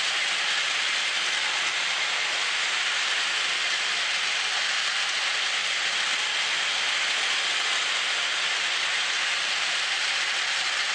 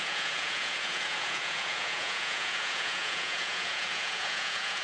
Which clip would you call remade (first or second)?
second